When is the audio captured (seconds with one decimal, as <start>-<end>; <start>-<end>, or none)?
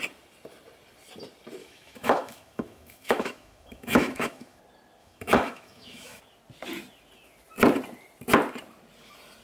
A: 0.0-1.6; 4.6-5.0; 6.2-9.4